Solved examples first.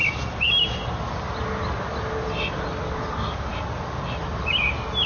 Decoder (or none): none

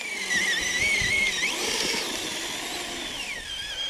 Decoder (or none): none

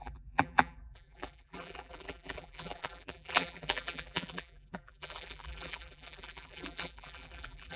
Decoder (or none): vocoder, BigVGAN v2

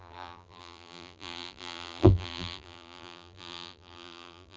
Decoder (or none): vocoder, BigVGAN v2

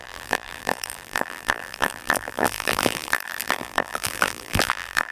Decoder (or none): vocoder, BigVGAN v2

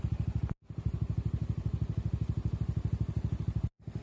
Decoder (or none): none